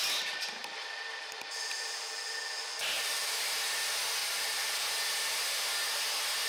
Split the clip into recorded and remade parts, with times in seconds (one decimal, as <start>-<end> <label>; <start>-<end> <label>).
0.0-0.6 recorded; 0.6-3.4 remade; 3.4-4.2 recorded; 4.2-4.8 remade; 4.8-6.5 recorded